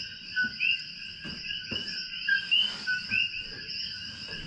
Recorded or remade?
recorded